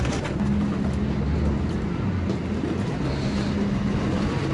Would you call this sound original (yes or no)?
yes